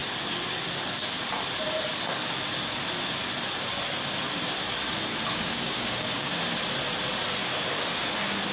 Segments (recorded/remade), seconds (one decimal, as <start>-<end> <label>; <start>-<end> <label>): 0.0-5.3 recorded; 5.3-6.4 remade; 6.4-8.5 recorded